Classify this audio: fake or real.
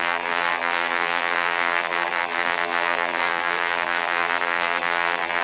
fake